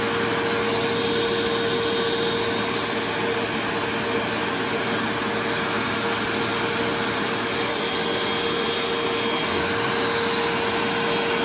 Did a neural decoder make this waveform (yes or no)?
no